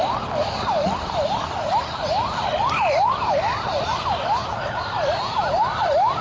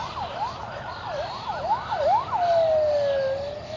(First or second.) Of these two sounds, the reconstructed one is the first